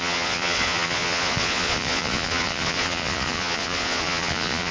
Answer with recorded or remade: remade